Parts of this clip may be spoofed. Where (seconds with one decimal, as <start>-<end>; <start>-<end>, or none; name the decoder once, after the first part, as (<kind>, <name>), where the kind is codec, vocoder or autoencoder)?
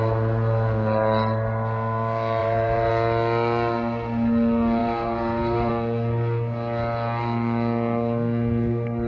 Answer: 2.4-2.9 (vocoder, BigVGAN v2); 4.8-5.7